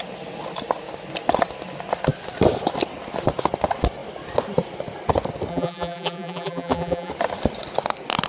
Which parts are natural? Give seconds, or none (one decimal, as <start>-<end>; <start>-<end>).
0.0-5.5; 7.1-8.3